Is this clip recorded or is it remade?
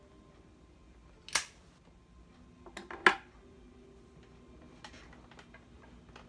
recorded